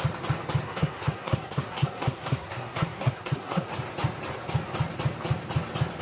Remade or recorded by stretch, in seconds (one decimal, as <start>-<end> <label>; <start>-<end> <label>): 0.0-0.6 recorded; 0.6-3.7 remade; 3.7-6.0 recorded